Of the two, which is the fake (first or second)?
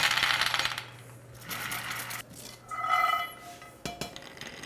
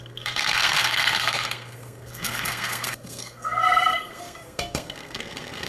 second